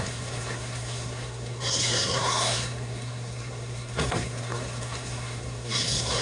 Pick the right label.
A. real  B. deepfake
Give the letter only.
B